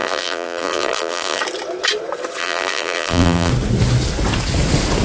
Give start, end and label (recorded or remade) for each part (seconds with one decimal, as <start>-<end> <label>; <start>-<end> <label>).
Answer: 0.0-1.4 remade; 1.4-2.4 recorded; 2.4-3.5 remade; 3.5-5.0 recorded